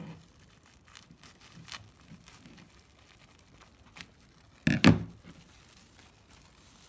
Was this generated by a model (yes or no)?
no